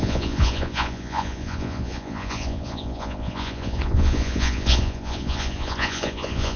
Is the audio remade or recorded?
remade